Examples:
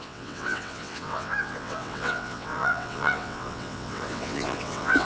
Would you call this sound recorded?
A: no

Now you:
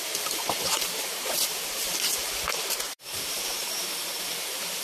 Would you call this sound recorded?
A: no